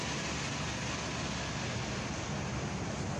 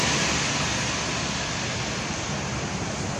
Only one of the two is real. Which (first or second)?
first